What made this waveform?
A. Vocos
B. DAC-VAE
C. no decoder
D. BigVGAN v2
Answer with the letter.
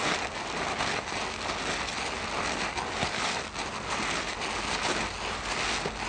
C